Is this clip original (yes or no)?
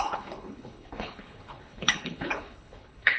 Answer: no